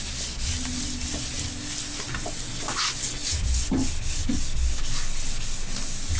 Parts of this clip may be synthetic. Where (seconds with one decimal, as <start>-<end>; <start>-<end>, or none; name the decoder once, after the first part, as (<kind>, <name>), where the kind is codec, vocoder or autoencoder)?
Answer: none